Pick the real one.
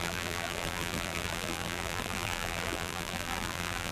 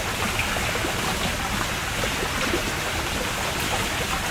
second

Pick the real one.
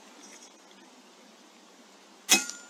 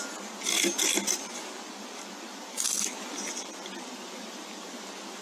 first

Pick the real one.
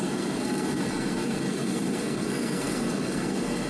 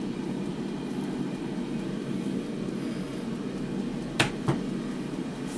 second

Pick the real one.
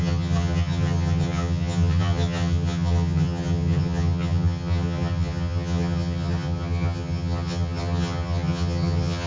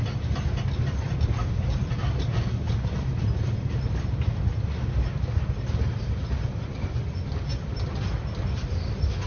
second